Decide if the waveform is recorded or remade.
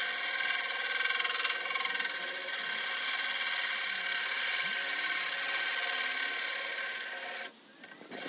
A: recorded